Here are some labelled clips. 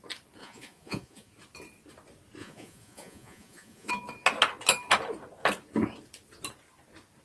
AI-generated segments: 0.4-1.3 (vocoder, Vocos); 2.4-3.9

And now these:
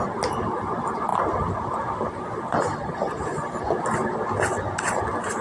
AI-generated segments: none